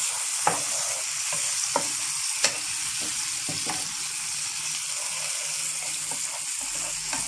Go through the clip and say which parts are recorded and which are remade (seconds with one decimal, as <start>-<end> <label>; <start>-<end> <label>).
0.0-7.3 recorded